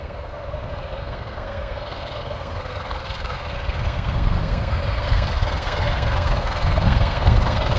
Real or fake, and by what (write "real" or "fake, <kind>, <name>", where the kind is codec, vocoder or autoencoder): fake, codec, SNAC